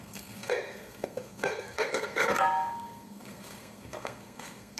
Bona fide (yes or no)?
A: no